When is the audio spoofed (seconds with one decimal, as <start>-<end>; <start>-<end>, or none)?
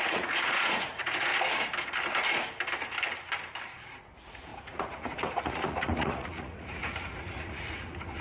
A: 0.0-1.3; 3.7-8.2